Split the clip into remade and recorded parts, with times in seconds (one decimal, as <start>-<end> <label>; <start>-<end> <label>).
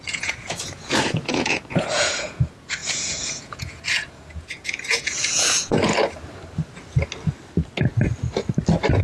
0.0-5.9 remade; 5.9-9.0 recorded